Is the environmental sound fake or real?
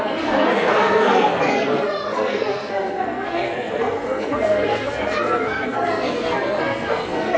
fake